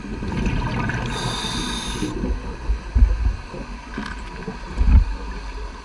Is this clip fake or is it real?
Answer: real